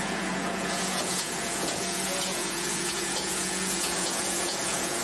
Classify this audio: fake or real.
fake